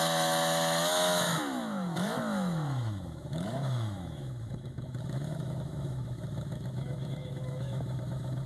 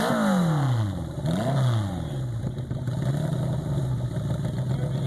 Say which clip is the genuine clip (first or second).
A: second